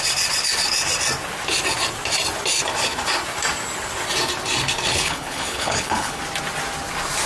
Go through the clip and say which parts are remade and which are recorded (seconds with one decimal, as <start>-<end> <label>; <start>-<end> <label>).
0.0-4.9 recorded; 4.9-6.2 remade; 6.2-7.3 recorded

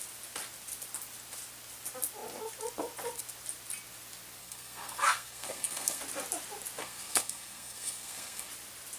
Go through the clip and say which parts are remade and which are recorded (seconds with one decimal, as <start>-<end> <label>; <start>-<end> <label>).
0.0-4.4 recorded; 4.4-6.0 remade; 6.0-6.8 recorded; 6.8-8.5 remade; 8.5-9.0 recorded

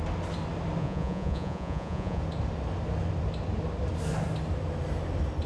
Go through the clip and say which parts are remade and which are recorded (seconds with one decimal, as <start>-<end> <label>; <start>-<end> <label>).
0.0-0.8 recorded; 0.8-2.2 remade; 2.2-5.5 recorded

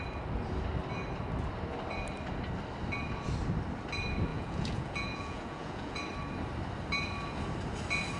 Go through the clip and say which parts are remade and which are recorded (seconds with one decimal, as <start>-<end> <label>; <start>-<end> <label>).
0.0-4.3 recorded; 4.3-6.0 remade; 6.0-8.2 recorded

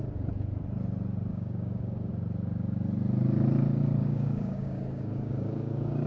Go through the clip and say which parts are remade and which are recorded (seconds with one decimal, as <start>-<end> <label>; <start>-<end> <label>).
0.0-1.3 recorded; 1.3-2.1 remade; 2.1-4.0 recorded; 4.0-6.1 remade

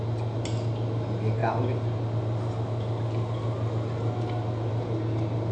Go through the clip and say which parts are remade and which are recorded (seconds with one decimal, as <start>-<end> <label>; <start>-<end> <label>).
0.0-5.5 recorded